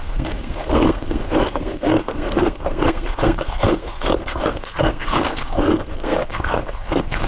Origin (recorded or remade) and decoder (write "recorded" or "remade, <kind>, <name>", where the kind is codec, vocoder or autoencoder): remade, codec, SNAC